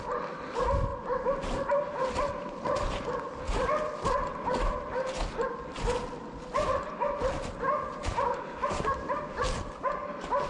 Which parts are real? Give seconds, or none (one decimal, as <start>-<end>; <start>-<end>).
0.0-0.9; 3.0-10.5